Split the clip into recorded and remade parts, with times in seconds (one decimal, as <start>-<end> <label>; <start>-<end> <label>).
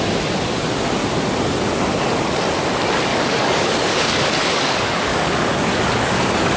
0.0-3.1 recorded; 3.1-6.6 remade